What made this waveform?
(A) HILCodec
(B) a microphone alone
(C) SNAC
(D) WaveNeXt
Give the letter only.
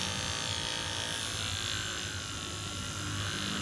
B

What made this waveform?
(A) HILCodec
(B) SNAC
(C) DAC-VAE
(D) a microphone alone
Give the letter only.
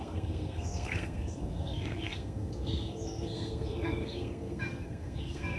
B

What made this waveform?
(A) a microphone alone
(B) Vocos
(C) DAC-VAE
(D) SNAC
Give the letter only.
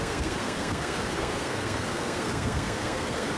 D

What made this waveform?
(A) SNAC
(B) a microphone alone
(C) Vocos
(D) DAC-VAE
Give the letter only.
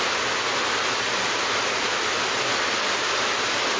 B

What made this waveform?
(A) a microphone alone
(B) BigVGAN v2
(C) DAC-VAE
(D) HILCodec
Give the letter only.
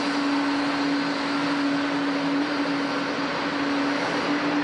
A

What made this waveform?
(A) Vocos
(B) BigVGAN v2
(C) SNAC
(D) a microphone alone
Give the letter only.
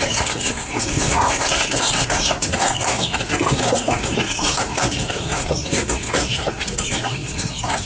C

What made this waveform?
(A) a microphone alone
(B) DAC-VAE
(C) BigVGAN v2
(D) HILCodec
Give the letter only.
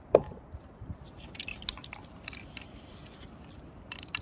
C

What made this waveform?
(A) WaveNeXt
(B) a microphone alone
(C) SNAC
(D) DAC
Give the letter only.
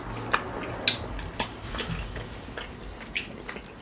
B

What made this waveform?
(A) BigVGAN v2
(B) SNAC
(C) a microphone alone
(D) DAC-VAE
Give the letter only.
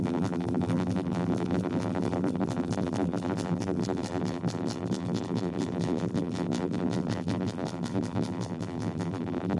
A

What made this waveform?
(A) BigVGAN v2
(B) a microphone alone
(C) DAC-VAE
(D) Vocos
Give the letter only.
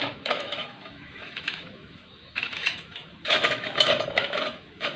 C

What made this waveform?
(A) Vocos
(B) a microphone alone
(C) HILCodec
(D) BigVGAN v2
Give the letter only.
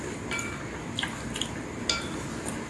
B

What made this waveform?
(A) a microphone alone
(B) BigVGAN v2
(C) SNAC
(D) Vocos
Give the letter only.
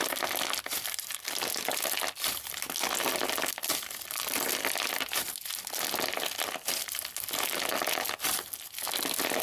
A